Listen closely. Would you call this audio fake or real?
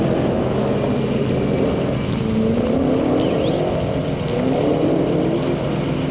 real